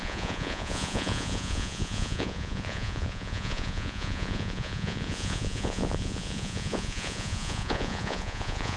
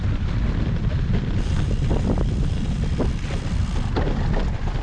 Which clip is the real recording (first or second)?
second